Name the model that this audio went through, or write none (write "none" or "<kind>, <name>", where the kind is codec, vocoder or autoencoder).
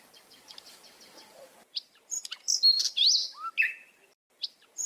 none